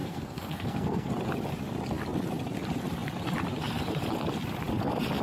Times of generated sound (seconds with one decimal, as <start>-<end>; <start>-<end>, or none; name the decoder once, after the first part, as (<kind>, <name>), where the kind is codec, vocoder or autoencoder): 0.0-1.1 (codec, SNAC)